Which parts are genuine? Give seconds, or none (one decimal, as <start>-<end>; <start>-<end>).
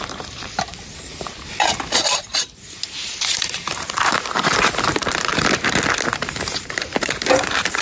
2.3-3.2; 5.3-6.4